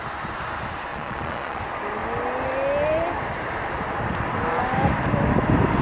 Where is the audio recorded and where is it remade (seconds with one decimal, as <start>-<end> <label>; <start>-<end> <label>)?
0.0-0.9 recorded; 0.9-1.6 remade; 1.6-5.8 recorded